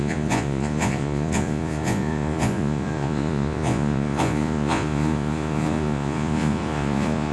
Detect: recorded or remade remade